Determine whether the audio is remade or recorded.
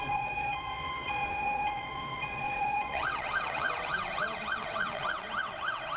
remade